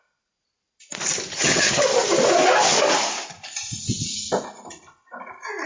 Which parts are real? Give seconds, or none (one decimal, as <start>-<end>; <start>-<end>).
0.0-1.3; 1.8-5.7